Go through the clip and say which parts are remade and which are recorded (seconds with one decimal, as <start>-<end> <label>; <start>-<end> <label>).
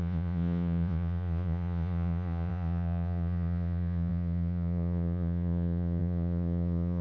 0.0-7.0 remade